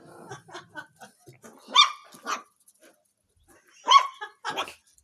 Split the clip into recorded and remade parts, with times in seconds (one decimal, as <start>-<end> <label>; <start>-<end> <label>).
0.0-5.0 recorded